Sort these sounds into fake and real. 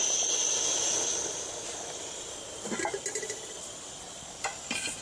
real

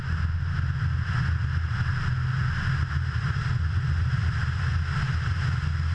real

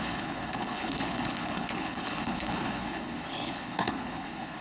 fake